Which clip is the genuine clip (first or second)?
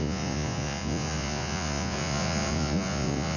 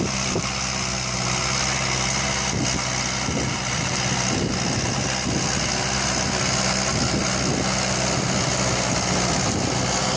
second